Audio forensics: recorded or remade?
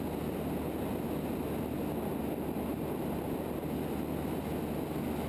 recorded